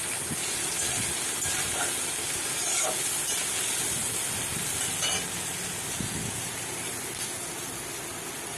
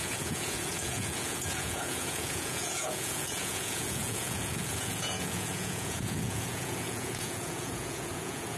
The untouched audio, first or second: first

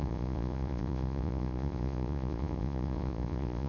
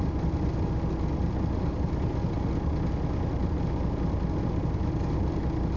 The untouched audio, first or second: second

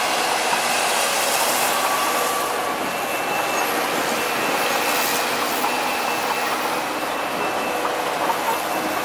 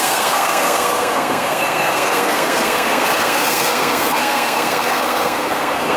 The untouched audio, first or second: first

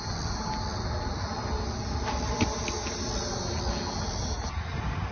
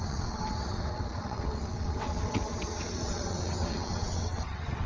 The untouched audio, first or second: first